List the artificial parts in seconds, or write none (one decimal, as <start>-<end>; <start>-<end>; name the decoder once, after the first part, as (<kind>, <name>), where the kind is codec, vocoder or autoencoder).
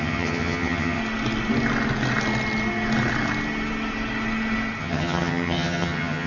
0.0-1.0 (vocoder, HiFi-GAN); 4.8-6.3